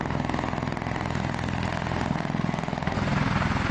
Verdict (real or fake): real